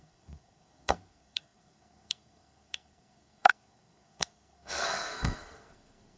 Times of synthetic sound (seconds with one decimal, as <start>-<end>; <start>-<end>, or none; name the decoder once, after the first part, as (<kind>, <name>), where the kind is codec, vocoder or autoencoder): 0.0-6.2 (codec, SNAC)